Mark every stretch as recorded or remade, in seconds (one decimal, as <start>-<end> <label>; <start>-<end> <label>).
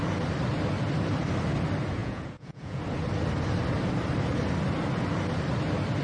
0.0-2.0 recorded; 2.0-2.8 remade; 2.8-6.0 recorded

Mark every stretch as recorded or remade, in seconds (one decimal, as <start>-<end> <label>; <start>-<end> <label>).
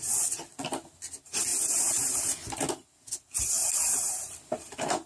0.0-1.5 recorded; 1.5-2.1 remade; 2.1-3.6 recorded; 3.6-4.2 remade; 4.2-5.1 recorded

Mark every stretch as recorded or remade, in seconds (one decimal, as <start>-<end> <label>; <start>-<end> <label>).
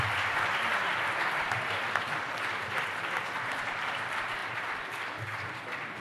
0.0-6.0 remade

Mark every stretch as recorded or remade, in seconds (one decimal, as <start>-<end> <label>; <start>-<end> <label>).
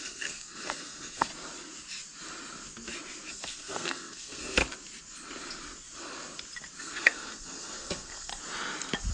0.0-1.3 remade; 1.3-3.3 recorded; 3.3-4.6 remade; 4.6-6.8 recorded; 6.8-8.3 remade; 8.3-9.1 recorded